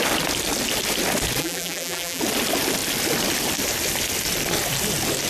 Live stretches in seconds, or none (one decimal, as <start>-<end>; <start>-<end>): 0.0-1.4; 2.2-5.3